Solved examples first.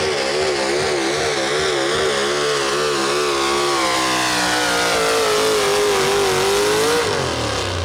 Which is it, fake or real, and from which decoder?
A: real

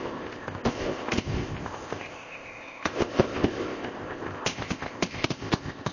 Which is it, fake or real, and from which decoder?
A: fake, codec, ZipCodec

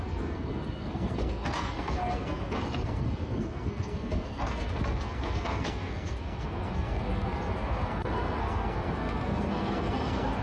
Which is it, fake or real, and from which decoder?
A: fake, codec, SNAC